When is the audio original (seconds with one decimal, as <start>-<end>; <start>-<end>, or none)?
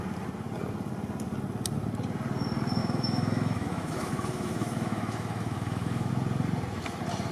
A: 0.0-2.8; 6.1-7.3